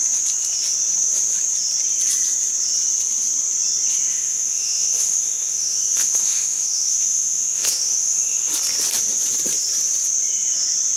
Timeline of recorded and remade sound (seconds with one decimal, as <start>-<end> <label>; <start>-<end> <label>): 0.0-4.1 recorded; 4.1-8.5 remade; 8.5-11.0 recorded